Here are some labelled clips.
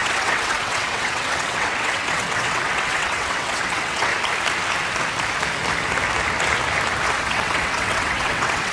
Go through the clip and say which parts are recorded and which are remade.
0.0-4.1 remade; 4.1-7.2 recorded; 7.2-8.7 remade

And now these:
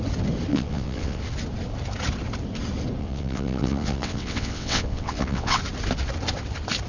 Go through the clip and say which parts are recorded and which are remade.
0.0-0.5 recorded; 0.5-1.2 remade; 1.2-3.0 recorded; 3.0-5.6 remade; 5.6-6.9 recorded